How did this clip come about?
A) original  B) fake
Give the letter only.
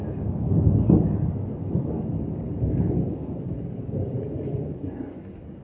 B